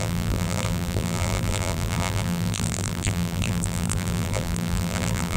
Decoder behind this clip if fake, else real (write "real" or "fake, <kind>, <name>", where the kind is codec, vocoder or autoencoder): fake, vocoder, BigVGAN v2